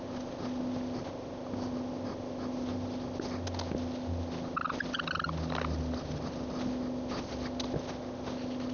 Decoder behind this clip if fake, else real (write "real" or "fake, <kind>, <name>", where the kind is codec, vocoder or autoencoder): real